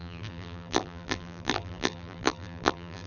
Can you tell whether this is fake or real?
fake